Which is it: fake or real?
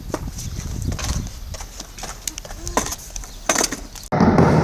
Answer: real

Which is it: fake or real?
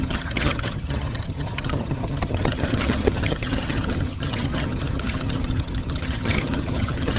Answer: fake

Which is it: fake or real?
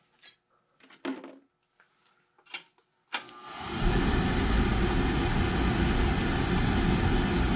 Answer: real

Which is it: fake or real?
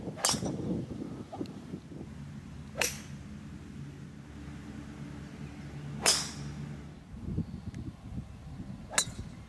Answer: real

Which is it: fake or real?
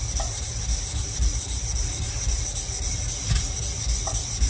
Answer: real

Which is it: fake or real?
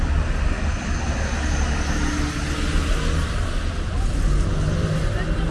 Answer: real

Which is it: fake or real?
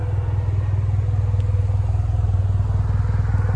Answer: real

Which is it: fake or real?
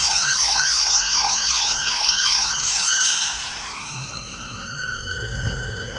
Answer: fake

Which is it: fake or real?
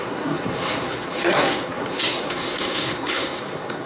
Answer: fake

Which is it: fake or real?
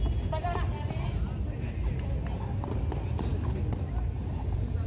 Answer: real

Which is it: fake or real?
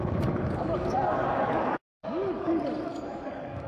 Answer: fake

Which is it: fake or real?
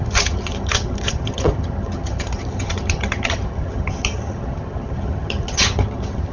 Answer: fake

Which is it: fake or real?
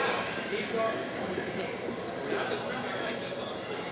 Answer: real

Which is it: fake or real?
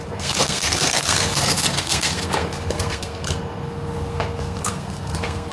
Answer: fake